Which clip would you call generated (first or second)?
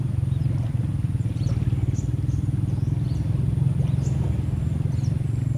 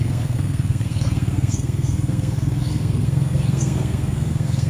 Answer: second